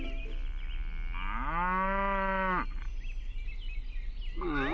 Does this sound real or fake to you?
real